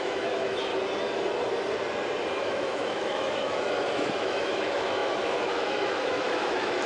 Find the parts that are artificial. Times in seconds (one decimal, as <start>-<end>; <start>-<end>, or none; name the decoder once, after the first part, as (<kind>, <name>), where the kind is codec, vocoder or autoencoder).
0.0-0.7 (autoencoder, DAC-VAE); 2.4-6.9